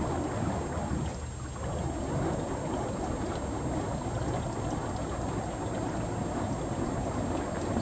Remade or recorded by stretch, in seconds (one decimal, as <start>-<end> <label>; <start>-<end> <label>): 0.0-7.8 recorded